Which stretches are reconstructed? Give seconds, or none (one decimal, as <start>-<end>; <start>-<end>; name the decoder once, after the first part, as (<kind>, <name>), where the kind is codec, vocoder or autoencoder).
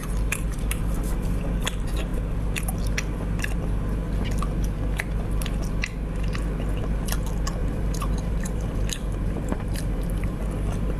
7.6-10.4 (vocoder, BigVGAN v2)